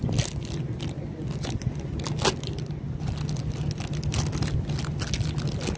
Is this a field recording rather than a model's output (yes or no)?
yes